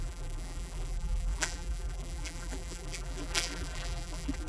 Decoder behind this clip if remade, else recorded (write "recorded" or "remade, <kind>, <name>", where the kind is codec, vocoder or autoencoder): remade, vocoder, BigVGAN v2